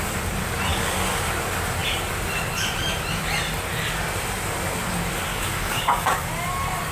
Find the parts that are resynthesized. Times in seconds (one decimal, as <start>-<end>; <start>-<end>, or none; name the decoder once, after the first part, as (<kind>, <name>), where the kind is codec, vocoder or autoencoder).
0.7-1.2 (codec, DAC); 5.3-6.3

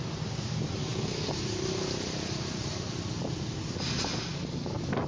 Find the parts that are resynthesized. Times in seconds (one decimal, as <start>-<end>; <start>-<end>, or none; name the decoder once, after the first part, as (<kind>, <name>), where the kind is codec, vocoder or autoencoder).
none

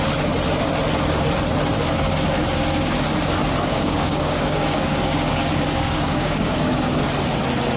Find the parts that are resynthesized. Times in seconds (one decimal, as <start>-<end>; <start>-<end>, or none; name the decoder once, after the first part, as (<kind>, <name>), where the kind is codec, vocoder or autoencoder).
3.7-7.0 (codec, DAC)

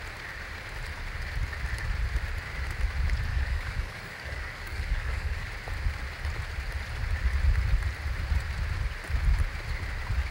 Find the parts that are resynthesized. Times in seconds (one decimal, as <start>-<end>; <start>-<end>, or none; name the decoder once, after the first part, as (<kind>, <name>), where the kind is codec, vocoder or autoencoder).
3.3-5.5 (codec, DAC)

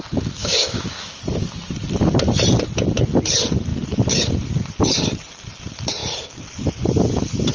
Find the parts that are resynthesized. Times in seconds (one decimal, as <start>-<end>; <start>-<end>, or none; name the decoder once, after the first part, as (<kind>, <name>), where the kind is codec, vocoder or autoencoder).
0.4-1.2 (codec, DAC)

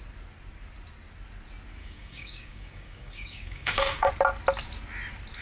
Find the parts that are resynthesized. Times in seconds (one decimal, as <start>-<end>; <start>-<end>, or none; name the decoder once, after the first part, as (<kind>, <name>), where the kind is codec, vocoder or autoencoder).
1.8-4.1 (codec, DAC)